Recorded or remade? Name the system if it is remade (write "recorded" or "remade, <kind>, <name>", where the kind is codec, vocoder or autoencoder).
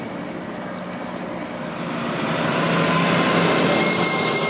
recorded